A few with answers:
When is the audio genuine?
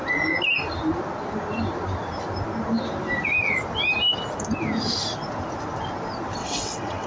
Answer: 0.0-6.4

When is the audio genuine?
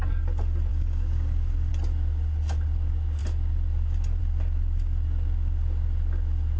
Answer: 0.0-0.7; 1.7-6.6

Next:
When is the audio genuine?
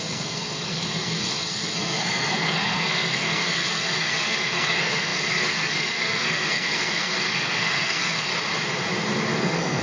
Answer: 8.3-9.4